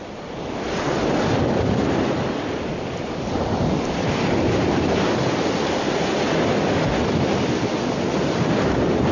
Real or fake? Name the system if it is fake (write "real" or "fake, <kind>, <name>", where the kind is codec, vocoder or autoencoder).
real